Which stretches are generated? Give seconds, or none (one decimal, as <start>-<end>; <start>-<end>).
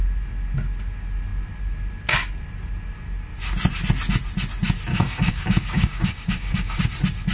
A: 4.9-6.8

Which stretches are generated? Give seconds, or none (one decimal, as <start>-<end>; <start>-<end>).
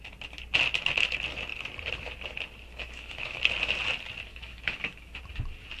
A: 2.7-3.4; 4.3-5.2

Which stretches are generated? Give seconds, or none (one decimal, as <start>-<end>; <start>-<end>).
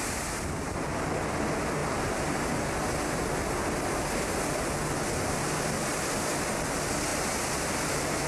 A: none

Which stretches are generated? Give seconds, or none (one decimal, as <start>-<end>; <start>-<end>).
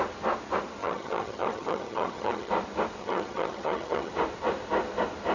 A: 0.8-2.5; 3.0-4.1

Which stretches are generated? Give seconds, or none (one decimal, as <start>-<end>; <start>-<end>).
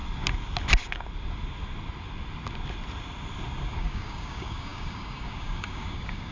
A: 3.8-6.3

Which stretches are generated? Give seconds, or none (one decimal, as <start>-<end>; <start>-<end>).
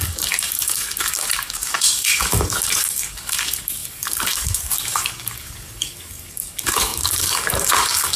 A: 0.0-8.2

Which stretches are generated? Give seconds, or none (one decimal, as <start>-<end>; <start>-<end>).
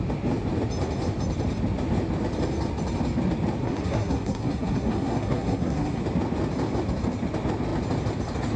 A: 3.6-6.0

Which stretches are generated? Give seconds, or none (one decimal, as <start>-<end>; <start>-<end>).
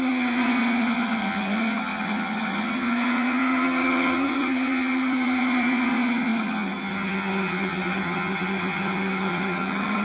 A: 0.0-10.0